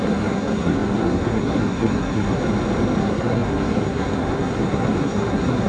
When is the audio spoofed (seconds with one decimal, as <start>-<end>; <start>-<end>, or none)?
0.0-2.4; 3.0-5.7